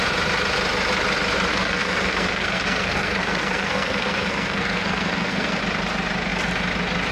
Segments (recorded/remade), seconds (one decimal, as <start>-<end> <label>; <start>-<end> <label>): 0.0-1.5 recorded; 1.5-5.6 remade; 5.6-7.1 recorded